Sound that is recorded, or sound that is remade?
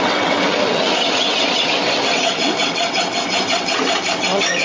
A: remade